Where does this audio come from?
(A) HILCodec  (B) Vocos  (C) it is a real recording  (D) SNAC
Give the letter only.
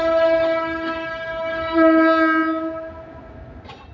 C